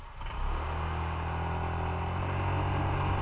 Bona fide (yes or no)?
yes